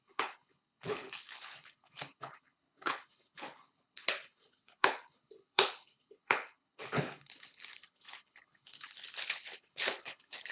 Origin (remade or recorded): remade